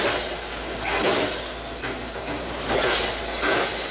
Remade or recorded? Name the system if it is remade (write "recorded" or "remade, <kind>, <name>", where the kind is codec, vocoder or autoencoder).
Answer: recorded